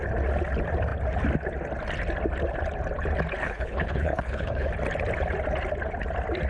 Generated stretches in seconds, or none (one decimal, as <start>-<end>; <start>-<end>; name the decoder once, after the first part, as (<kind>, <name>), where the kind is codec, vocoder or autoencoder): 3.4-4.7 (codec, HILCodec)